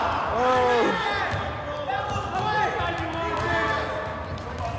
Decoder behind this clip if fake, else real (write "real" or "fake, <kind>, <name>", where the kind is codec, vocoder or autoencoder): real